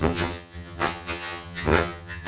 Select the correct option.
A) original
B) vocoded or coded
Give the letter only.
B